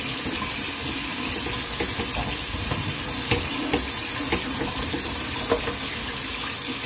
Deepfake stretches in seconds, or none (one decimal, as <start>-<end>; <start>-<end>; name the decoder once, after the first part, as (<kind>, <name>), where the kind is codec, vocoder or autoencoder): none